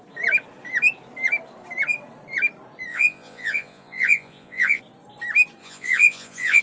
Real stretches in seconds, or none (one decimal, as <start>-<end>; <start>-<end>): 0.0-2.9; 4.8-5.6